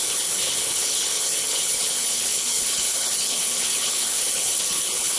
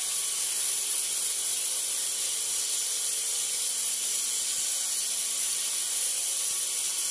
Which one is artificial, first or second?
first